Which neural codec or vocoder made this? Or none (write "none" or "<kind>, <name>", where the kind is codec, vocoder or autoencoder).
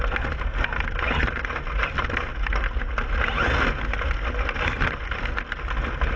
none